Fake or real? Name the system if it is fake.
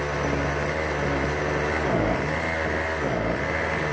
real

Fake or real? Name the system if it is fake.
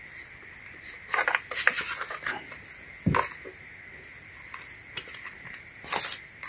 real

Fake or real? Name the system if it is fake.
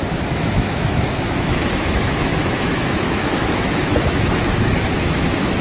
fake, autoencoder, DAC-VAE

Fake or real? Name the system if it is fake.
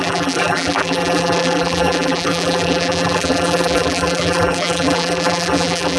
fake, vocoder, BigVGAN v2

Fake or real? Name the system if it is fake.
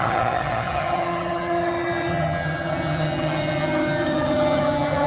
fake, vocoder, HiFi-GAN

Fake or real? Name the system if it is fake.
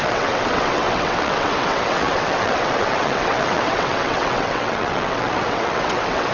fake, vocoder, WaveNeXt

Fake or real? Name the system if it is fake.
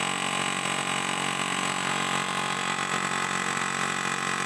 fake, vocoder, Vocos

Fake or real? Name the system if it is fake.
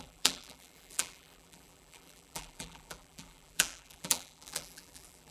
fake, vocoder, BigVGAN v2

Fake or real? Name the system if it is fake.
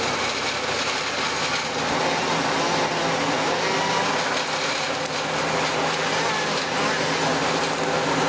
real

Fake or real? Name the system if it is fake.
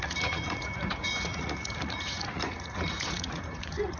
fake, vocoder, Vocos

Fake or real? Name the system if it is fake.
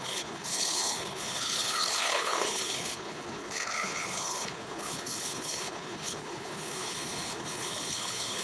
fake, codec, HILCodec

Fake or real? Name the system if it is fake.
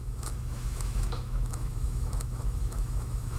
fake, autoencoder, DAC-VAE